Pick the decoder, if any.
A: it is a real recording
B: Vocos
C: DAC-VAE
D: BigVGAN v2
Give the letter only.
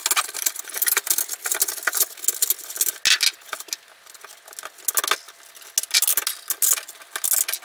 A